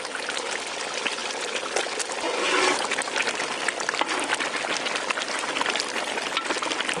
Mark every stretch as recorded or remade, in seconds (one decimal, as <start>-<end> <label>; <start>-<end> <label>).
0.0-7.0 recorded